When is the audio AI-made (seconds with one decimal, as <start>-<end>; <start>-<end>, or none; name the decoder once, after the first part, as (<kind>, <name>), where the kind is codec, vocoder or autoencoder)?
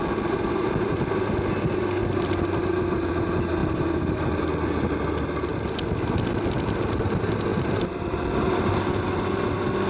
7.5-8.2 (vocoder, BigVGAN v2)